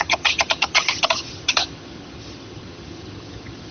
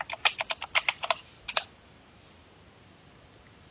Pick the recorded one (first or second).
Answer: second